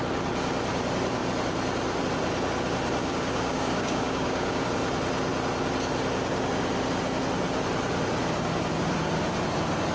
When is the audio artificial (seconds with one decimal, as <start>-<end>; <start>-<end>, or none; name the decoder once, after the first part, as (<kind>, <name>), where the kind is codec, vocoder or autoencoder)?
3.0-4.7 (codec, DAC)